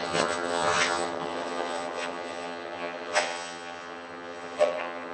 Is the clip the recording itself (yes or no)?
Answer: no